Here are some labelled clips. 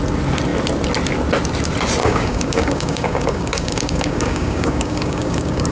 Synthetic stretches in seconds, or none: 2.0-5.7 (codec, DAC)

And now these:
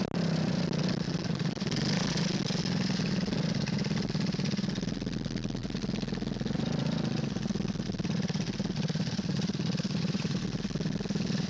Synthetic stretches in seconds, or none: none

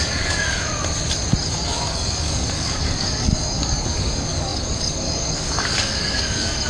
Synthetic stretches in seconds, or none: 0.0-0.7 (codec, DAC); 1.5-6.7

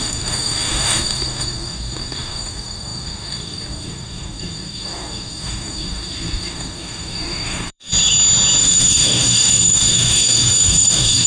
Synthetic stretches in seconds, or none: 0.0-7.9 (codec, DAC); 8.6-11.3

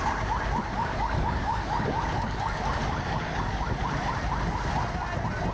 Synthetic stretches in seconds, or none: 0.6-3.8 (codec, DAC)

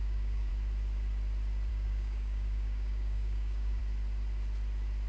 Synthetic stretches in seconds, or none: 0.0-0.5 (codec, DAC); 1.7-3.8

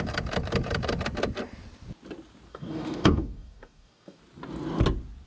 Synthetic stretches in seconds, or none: 2.5-4.2 (codec, DAC)